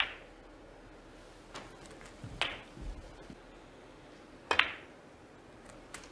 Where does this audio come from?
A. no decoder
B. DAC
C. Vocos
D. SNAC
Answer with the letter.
A